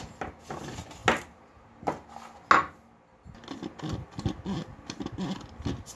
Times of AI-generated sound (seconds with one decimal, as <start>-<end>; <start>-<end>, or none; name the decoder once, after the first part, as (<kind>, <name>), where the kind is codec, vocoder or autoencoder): 4.7-5.5 (vocoder, BigVGAN v2)